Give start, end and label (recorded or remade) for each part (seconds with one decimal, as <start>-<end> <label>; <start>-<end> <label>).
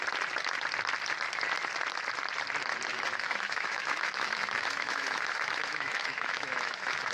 0.0-2.9 recorded; 2.9-7.1 remade